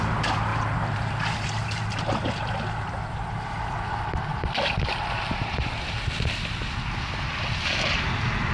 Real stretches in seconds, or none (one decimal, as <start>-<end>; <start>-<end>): 0.0-0.5; 2.0-8.5

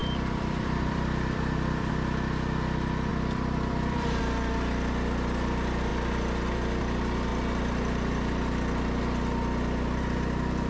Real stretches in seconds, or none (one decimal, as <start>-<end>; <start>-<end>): 1.9-3.1; 4.2-10.7

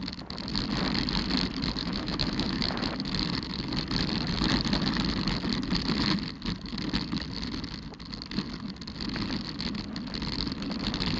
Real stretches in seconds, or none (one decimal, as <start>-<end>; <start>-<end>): 0.0-1.8; 2.8-11.2

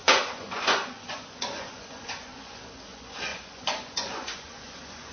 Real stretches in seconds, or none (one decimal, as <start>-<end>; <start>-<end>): none

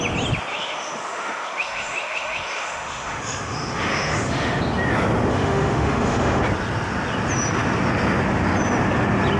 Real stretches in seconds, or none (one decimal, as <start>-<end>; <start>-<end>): 0.0-0.5; 4.6-5.3; 6.4-9.4